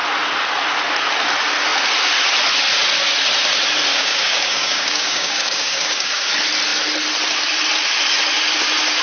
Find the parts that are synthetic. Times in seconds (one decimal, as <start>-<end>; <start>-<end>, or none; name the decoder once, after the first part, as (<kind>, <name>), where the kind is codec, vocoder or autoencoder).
3.9-6.3 (codec, DAC)